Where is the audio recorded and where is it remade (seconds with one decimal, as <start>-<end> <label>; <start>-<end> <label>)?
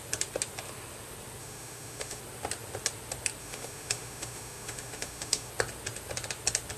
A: 0.0-1.4 recorded; 1.4-2.2 remade; 2.2-3.4 recorded; 3.4-5.5 remade; 5.5-6.8 recorded